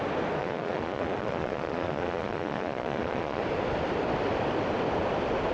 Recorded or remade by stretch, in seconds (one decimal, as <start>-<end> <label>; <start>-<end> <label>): 0.0-0.4 recorded; 0.4-3.4 remade; 3.4-5.5 recorded